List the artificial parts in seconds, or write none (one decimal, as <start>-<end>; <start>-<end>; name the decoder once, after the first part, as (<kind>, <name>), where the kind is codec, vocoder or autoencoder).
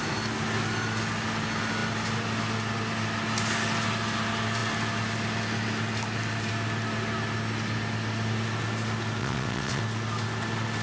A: 9.2-9.8 (vocoder, WaveNeXt)